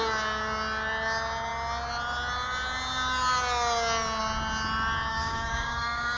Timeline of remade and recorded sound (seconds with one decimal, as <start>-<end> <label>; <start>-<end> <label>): 0.0-5.1 recorded; 5.1-6.2 remade